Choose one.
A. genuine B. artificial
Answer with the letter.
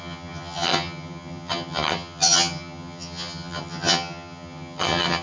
B